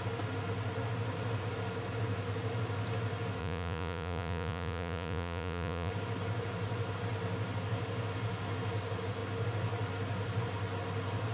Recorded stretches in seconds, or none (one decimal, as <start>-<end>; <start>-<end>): 0.0-3.4; 5.9-11.3